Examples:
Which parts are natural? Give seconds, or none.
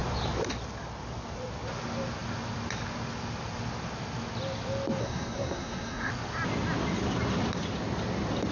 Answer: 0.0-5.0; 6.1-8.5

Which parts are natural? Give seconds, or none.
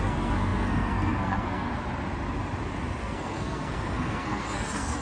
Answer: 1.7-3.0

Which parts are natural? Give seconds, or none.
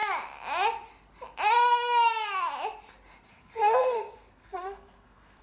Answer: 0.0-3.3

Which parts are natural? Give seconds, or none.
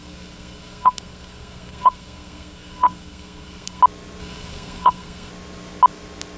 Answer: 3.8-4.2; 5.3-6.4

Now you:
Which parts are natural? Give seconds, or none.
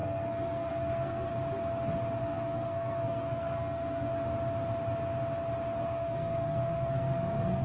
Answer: 1.3-2.2; 4.1-5.8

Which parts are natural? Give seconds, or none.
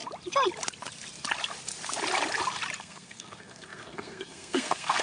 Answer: 0.0-2.8